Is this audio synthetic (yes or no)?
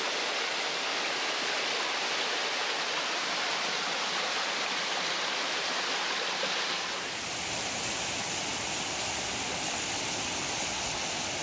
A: no